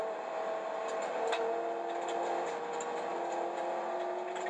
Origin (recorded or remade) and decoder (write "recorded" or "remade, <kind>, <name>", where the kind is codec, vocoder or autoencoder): recorded